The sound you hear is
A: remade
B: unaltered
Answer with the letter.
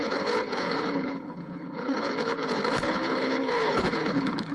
A